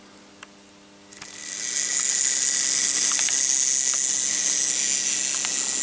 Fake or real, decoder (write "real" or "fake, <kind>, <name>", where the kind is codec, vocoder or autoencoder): real